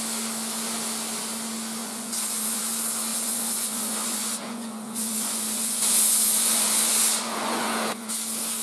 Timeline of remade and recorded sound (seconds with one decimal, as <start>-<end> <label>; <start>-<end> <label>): 0.0-1.8 recorded; 1.8-2.6 remade; 2.6-3.1 recorded; 3.1-8.1 remade; 8.1-8.6 recorded